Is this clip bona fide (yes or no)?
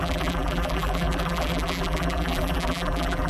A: no